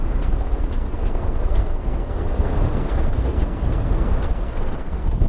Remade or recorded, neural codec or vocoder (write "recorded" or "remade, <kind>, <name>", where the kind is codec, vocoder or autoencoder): remade, codec, SNAC